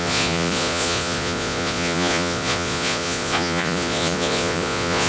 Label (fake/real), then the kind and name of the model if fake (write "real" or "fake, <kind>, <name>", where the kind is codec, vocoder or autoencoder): fake, vocoder, Vocos